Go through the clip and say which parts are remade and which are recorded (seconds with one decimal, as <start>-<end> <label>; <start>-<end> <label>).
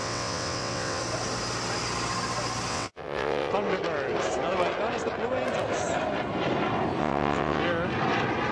0.0-1.0 remade; 1.0-2.7 recorded; 2.7-3.5 remade; 3.5-7.0 recorded; 7.0-7.6 remade; 7.6-8.5 recorded